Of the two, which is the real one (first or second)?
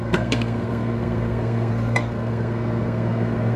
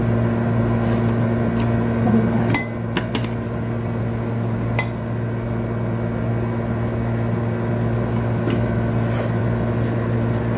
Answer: second